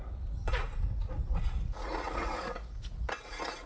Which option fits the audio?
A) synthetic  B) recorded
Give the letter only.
A